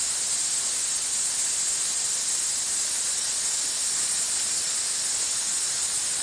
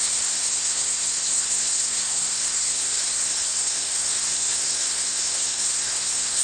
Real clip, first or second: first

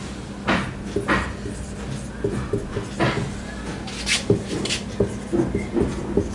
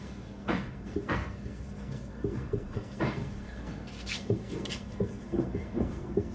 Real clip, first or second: first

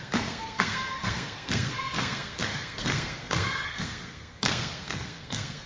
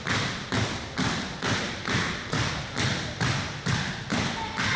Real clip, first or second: second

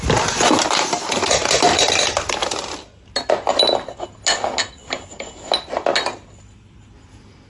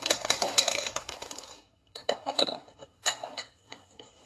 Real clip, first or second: first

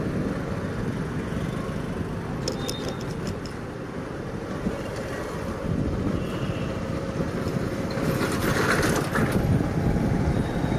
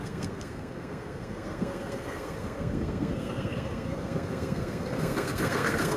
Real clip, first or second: first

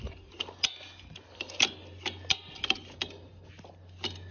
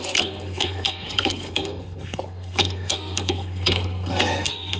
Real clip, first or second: first